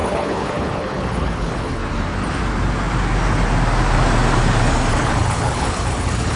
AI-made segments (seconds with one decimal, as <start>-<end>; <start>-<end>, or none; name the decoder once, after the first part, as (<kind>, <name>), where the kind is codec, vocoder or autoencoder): 0.0-1.8 (codec, HILCodec); 4.9-6.4